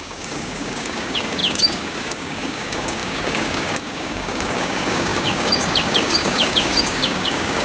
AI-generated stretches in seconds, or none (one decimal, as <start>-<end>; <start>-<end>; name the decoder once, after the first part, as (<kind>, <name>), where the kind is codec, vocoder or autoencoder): 0.0-7.6 (codec, DAC)

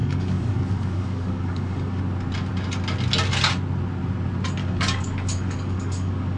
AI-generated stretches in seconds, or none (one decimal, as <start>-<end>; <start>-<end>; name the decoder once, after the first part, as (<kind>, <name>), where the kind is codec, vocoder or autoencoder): 0.0-2.0 (codec, DAC); 4.6-6.4